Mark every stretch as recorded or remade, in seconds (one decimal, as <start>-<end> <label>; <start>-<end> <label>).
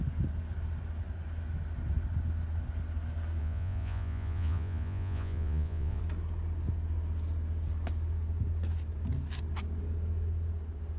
0.0-3.4 recorded; 3.4-6.0 remade; 6.0-11.0 recorded